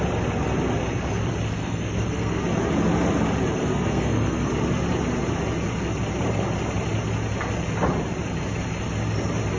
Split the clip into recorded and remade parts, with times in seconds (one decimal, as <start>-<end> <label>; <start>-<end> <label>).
0.0-1.6 recorded; 1.6-2.4 remade; 2.4-3.6 recorded; 3.6-4.5 remade; 4.5-9.6 recorded